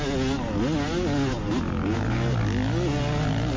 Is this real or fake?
real